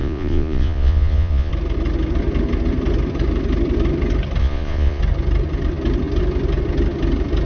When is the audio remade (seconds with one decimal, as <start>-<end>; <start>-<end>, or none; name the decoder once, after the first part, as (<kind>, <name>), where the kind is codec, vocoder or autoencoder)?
0.0-1.5 (vocoder, Vocos); 4.4-5.0